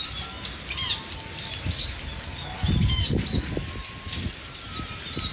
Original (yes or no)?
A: yes